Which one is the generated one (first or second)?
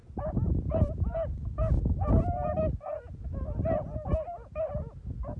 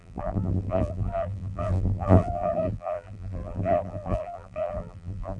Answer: second